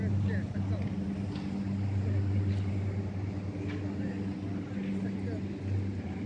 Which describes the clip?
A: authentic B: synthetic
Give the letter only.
A